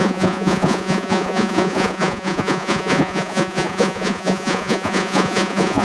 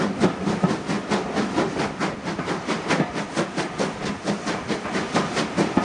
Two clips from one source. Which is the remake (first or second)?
first